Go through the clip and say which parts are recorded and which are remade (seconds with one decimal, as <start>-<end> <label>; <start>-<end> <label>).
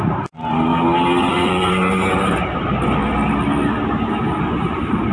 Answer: 0.0-0.7 remade; 0.7-1.3 recorded; 1.3-3.0 remade; 3.0-4.6 recorded; 4.6-5.1 remade